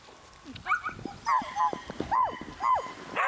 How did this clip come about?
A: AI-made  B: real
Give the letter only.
B